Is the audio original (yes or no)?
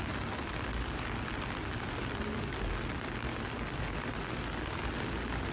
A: yes